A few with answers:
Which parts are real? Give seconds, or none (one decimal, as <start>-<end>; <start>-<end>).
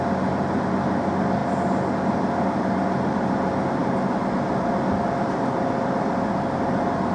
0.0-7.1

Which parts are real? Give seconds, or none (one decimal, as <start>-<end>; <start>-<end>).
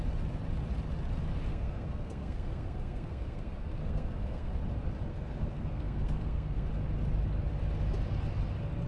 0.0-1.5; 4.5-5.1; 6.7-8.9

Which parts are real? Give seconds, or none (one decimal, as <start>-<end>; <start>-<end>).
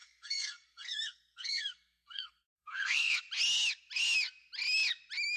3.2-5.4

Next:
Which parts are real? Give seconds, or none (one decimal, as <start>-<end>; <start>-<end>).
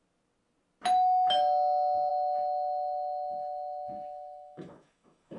0.0-2.1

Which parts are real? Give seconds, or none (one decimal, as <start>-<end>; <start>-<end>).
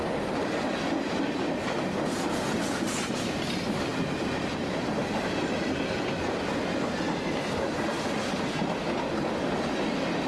0.0-10.3